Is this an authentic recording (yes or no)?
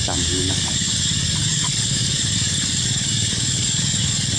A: no